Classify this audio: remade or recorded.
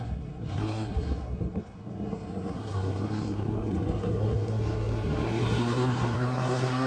remade